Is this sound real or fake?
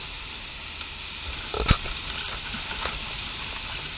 real